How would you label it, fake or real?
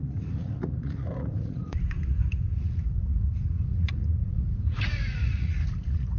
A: fake